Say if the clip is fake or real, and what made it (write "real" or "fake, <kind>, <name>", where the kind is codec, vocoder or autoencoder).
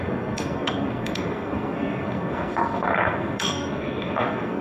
fake, codec, SNAC